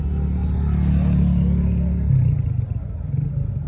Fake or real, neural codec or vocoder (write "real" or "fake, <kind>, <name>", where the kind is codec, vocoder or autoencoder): real